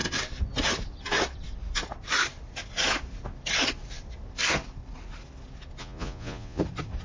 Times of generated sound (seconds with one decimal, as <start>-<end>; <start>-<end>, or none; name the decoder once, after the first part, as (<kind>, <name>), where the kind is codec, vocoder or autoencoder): 5.8-6.6 (vocoder, Vocos)